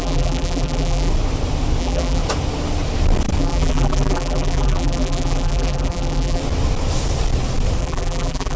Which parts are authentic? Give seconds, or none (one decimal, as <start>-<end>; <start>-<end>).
1.1-1.8; 2.2-3.4; 6.4-7.8